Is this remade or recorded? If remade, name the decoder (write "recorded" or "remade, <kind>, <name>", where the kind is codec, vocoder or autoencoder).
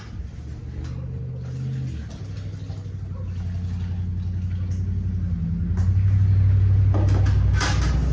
recorded